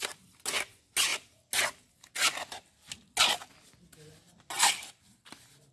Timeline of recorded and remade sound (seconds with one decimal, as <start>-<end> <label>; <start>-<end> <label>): 0.0-5.7 recorded